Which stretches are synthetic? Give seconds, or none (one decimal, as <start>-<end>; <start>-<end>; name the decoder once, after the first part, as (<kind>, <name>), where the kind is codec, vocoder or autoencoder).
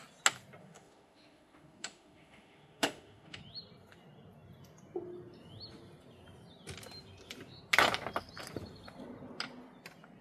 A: 0.6-3.4 (autoencoder, DAC-VAE)